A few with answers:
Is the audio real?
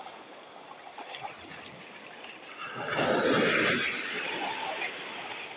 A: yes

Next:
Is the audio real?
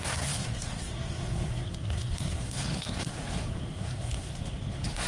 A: no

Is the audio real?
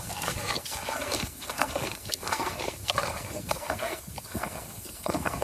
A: no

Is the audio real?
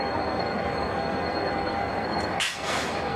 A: no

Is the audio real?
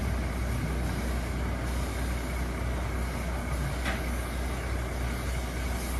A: yes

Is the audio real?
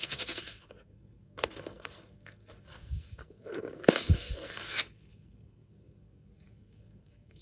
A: no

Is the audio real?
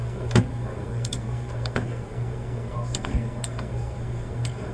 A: no